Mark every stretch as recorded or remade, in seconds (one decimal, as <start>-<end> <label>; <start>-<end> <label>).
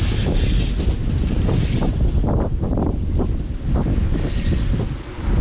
0.0-5.4 recorded